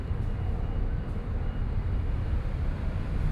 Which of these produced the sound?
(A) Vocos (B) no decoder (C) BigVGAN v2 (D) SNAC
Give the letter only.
C